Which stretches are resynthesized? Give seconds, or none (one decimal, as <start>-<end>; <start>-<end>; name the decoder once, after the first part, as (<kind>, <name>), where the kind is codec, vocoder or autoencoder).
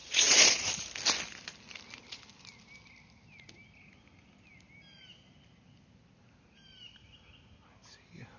0.0-0.7 (vocoder, Vocos)